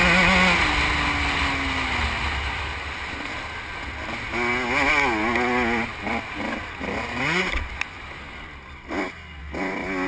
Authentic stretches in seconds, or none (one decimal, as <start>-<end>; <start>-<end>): 0.0-10.1